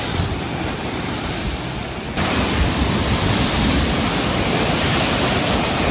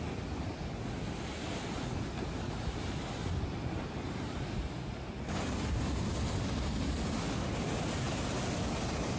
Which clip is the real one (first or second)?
second